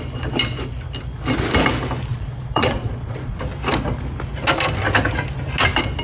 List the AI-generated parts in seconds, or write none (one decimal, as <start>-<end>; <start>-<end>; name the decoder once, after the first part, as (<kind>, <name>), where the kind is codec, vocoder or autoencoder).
2.1-3.4 (vocoder, Vocos)